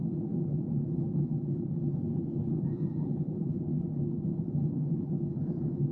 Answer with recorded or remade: remade